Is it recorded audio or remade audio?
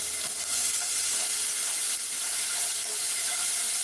recorded